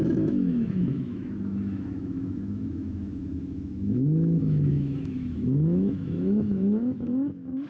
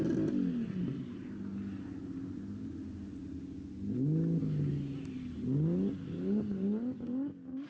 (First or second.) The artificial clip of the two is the first